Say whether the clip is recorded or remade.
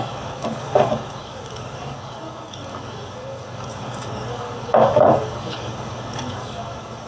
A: remade